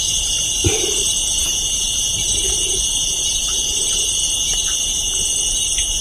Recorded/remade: remade